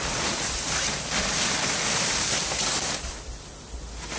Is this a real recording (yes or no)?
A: yes